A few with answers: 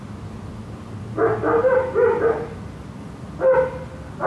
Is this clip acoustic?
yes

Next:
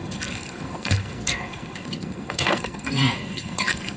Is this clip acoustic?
no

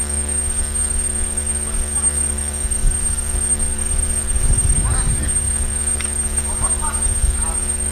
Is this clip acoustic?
no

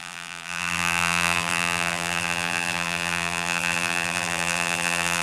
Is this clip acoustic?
no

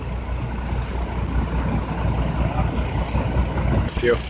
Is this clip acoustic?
yes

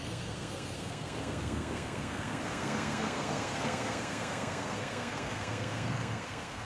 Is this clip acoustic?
no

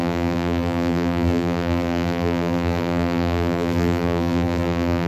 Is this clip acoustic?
no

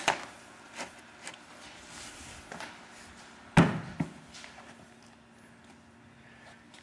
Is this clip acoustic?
yes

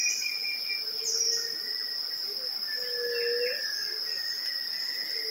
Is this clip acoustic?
yes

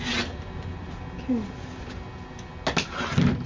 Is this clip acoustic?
yes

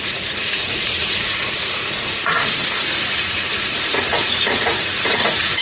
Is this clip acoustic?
no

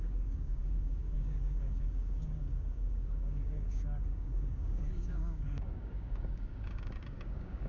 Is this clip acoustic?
no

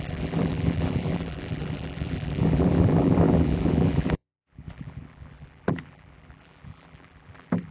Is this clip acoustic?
no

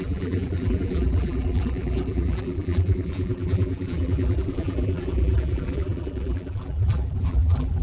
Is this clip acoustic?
no